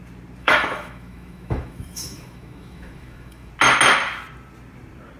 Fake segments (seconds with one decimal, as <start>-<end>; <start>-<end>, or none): 0.4-3.5